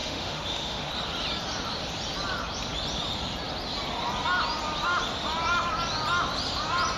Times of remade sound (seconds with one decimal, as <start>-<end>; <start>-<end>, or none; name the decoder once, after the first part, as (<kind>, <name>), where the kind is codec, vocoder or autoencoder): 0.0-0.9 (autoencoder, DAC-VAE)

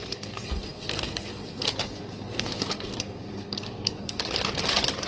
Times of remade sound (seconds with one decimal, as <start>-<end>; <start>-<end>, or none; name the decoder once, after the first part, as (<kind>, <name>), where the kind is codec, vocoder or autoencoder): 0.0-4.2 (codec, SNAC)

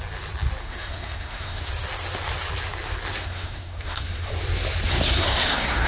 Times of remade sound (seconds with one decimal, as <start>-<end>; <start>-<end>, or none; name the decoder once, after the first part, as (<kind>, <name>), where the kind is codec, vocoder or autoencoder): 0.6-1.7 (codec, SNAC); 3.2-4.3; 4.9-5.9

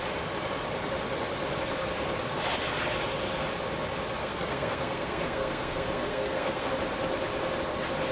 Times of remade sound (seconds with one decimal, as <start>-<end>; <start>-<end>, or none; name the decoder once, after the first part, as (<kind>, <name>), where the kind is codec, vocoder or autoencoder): 4.2-6.7 (codec, SNAC)

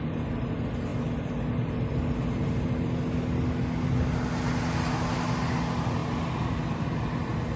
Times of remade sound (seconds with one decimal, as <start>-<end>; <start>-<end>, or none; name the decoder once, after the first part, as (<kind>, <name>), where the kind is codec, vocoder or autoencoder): none

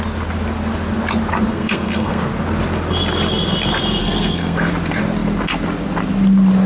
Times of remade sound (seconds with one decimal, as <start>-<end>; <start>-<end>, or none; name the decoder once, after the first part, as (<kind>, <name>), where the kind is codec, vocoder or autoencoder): 1.5-2.2 (codec, SNAC); 4.0-4.7

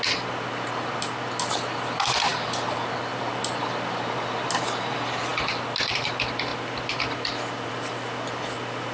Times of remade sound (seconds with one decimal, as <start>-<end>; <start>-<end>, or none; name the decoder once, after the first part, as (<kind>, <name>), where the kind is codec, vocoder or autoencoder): 6.5-7.7 (vocoder, BigVGAN v2)

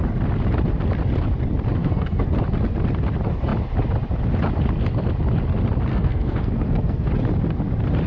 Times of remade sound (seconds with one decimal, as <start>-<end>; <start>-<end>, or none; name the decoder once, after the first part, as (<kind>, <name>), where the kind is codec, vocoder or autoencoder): 1.8-2.3 (codec, SNAC); 5.9-7.1